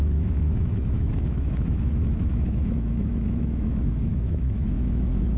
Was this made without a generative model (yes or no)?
no